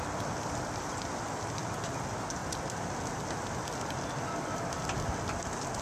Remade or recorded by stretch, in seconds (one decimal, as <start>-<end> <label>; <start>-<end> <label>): 0.0-5.8 recorded